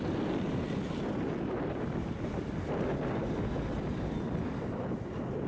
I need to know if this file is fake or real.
real